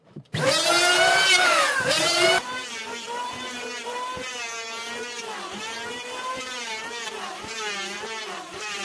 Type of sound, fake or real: fake